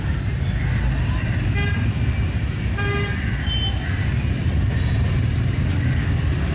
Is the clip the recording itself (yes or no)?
yes